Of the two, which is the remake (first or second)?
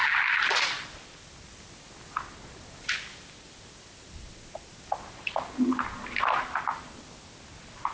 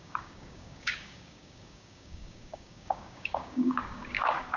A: second